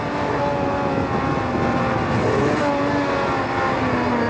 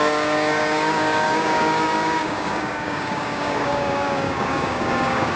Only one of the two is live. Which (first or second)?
first